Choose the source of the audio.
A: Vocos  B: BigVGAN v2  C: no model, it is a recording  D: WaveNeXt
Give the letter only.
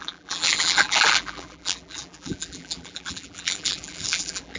B